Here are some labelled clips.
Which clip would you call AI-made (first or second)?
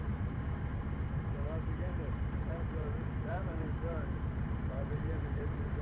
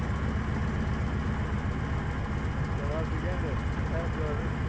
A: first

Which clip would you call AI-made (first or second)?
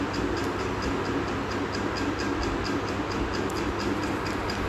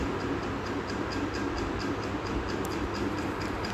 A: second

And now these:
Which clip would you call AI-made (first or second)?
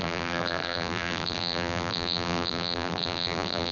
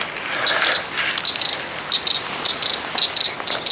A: first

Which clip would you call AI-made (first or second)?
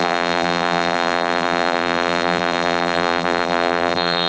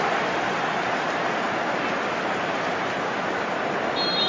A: first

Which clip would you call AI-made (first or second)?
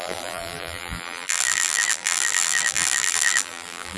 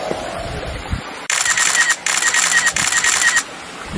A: first